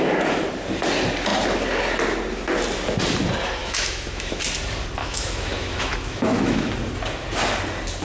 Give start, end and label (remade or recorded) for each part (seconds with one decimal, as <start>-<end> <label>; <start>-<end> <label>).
0.0-3.6 recorded; 3.6-4.4 remade; 4.4-5.0 recorded; 5.0-6.7 remade; 6.7-8.0 recorded